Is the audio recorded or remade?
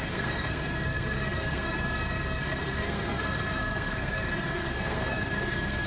remade